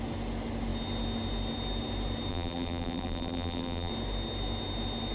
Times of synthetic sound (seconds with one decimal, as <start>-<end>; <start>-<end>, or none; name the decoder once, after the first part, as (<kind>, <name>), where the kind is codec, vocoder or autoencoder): 2.3-3.9 (vocoder, BigVGAN v2)